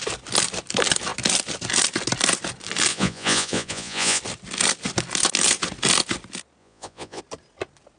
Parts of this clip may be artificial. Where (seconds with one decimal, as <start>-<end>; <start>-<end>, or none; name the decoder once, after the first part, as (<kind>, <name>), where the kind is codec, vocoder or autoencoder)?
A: 2.9-4.2 (vocoder, Vocos); 6.6-7.2